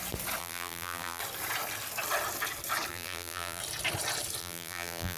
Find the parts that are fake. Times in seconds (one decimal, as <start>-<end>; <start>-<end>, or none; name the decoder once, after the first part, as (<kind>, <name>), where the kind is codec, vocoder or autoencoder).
0.4-1.2 (vocoder, BigVGAN v2); 2.9-3.6; 4.4-5.2